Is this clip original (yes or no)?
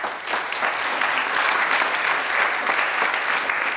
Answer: yes